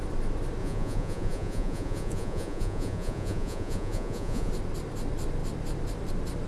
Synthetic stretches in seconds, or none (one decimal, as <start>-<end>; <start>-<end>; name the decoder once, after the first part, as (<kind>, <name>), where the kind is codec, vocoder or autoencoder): 0.6-4.5 (vocoder, Vocos)